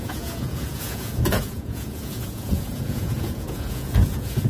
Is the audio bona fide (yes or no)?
no